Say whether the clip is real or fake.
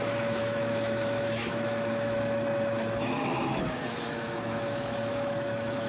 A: fake